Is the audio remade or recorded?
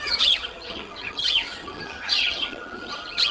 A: remade